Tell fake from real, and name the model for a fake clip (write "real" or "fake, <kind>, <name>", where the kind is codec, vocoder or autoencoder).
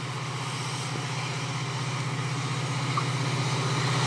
real